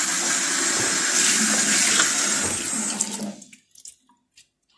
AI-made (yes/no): no